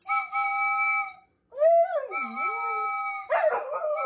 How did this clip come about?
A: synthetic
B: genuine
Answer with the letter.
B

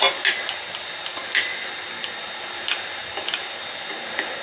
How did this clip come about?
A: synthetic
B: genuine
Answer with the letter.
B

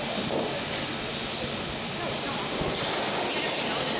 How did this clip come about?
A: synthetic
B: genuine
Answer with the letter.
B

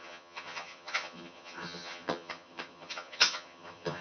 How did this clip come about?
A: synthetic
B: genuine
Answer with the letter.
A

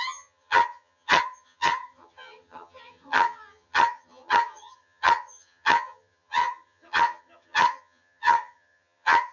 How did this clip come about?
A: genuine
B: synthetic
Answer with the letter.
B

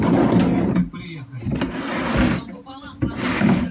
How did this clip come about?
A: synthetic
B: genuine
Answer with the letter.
B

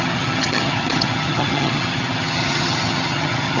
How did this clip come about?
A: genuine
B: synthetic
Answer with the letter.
B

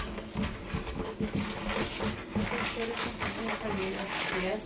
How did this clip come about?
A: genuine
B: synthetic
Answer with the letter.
A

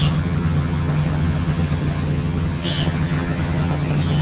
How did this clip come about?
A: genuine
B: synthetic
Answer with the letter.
B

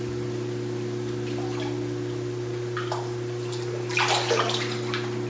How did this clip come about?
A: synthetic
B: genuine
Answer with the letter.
B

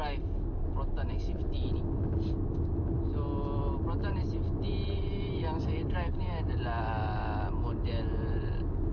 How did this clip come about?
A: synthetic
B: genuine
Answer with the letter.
B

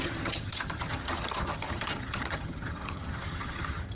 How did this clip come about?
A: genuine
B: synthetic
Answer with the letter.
B